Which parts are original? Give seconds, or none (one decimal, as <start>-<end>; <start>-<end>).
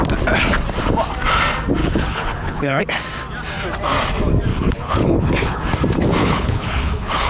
0.0-1.8; 2.8-4.5; 5.7-6.2